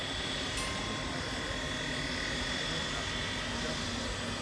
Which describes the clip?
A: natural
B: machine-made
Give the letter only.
A